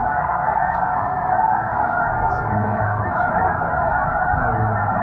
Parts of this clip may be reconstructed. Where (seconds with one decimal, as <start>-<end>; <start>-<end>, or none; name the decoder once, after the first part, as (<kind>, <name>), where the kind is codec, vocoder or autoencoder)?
0.0-3.0 (codec, SNAC)